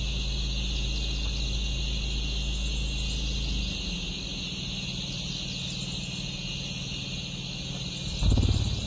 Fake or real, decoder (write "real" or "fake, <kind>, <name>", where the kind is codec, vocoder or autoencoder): real